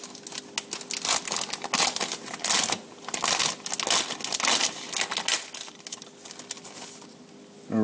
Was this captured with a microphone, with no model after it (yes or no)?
yes